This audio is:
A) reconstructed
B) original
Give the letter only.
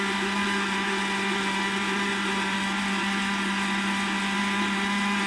B